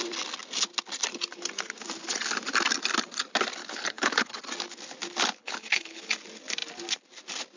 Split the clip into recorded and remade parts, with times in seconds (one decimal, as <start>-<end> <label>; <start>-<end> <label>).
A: 0.0-3.6 recorded; 3.6-4.4 remade; 4.4-5.4 recorded; 5.4-6.1 remade; 6.1-7.6 recorded